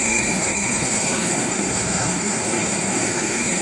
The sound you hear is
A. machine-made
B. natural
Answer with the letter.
A